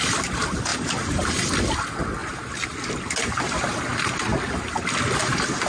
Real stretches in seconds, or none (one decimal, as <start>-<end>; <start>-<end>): 0.0-0.7; 1.6-5.7